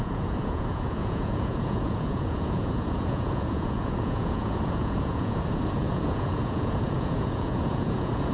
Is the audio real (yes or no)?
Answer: no